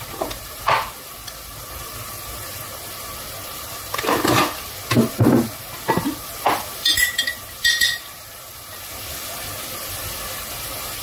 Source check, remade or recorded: recorded